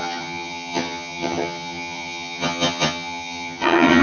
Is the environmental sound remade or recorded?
remade